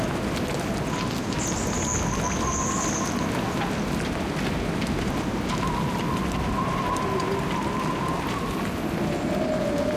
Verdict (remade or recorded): recorded